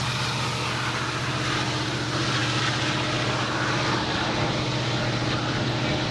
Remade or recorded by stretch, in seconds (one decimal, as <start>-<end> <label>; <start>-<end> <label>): 0.0-6.1 recorded